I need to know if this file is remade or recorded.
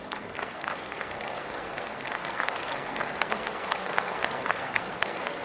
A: remade